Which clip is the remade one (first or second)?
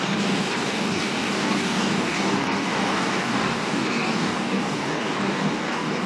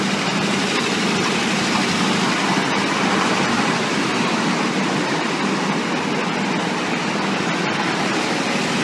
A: first